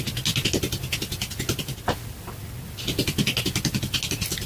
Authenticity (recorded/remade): recorded